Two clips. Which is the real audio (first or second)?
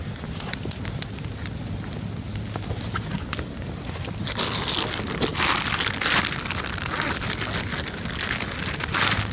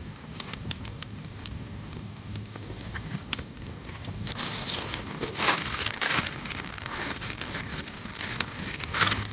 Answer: first